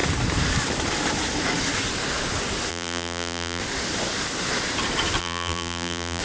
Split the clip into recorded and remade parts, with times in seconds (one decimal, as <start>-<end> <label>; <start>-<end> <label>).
0.0-2.7 recorded; 2.7-3.6 remade; 3.6-5.2 recorded; 5.2-6.2 remade